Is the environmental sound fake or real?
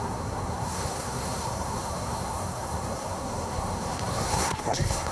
fake